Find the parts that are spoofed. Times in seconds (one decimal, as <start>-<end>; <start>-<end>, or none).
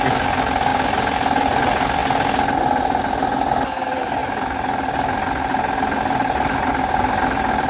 none